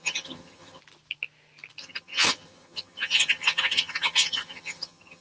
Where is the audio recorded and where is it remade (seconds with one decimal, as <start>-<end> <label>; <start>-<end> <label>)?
0.0-0.8 remade; 0.8-1.8 recorded; 1.8-5.2 remade